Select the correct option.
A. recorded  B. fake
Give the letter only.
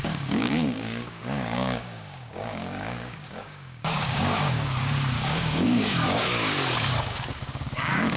B